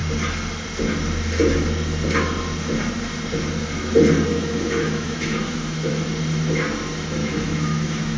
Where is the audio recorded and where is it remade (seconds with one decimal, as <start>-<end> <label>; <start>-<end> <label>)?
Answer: 0.0-4.3 recorded; 4.3-5.9 remade; 5.9-7.2 recorded; 7.2-8.2 remade